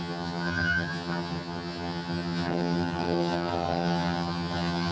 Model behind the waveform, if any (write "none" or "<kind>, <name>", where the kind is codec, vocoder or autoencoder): vocoder, HiFi-GAN